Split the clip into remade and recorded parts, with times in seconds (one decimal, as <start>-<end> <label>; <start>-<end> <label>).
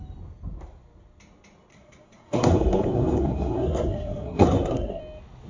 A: 0.0-1.7 recorded; 1.7-5.0 remade; 5.0-5.5 recorded